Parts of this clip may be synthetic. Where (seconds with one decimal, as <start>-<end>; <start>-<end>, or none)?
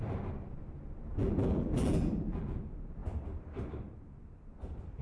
1.1-2.6